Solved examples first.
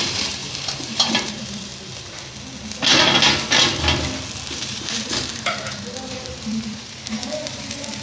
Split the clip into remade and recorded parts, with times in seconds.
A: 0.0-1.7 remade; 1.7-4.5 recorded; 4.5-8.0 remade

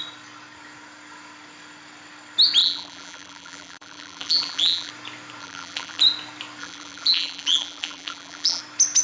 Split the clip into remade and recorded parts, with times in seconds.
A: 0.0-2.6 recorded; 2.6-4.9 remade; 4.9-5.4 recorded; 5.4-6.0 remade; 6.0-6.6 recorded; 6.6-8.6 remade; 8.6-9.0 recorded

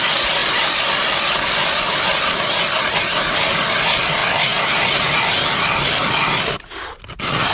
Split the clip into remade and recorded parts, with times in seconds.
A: 0.0-7.5 recorded